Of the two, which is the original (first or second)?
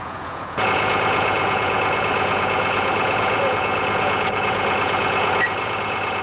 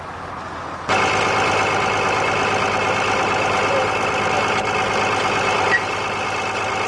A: second